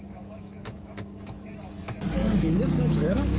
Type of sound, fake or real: fake